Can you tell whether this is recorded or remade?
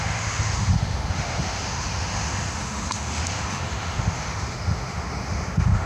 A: remade